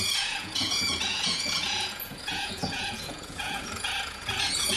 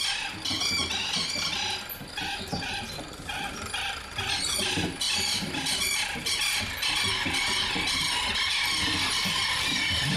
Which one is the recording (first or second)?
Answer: second